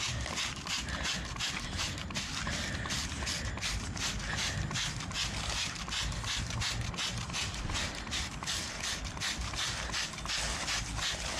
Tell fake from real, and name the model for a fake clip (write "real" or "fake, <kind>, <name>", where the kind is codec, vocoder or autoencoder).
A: real